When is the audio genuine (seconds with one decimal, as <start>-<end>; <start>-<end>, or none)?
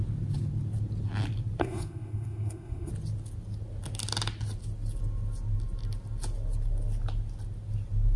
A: 0.0-1.6; 2.9-8.2